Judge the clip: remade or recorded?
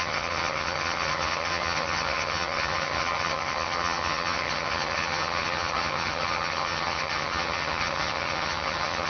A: remade